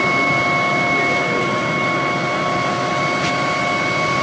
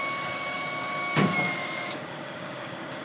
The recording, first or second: first